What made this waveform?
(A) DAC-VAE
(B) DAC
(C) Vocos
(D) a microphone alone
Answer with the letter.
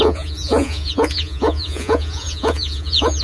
C